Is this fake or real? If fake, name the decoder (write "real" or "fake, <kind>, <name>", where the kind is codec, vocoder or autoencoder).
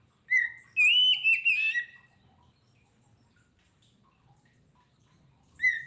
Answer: real